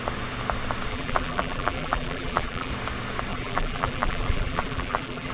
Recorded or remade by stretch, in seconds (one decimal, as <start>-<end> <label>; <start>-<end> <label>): 0.0-0.9 recorded; 0.9-2.7 remade; 2.7-3.3 recorded; 3.3-5.3 remade